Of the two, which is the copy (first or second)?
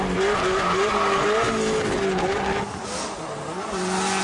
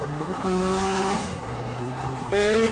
second